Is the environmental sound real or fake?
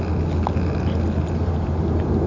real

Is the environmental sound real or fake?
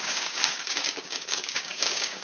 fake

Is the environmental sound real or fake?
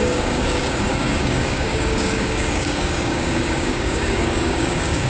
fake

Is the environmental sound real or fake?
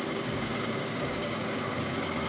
fake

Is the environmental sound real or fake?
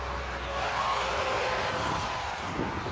real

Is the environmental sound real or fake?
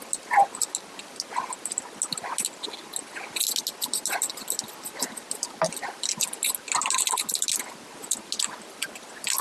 real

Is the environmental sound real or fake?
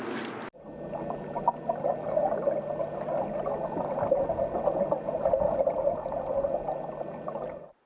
real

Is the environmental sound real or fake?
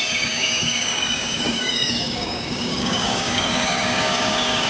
fake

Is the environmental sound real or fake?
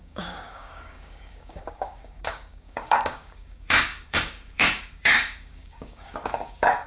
fake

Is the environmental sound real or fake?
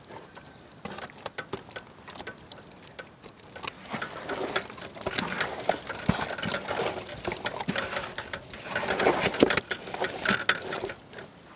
real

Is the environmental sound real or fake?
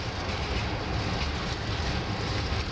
real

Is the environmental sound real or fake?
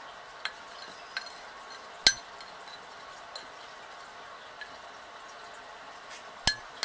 real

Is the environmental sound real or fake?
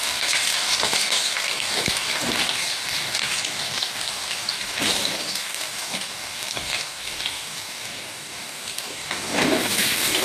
fake